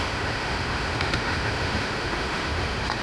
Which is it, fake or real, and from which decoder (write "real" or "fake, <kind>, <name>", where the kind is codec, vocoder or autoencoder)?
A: fake, autoencoder, DAC-VAE